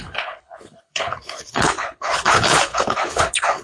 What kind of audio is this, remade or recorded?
remade